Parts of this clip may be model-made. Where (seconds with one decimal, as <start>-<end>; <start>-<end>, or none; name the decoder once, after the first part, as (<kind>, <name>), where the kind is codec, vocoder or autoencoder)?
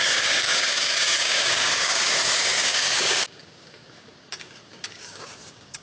0.0-5.8 (codec, DAC)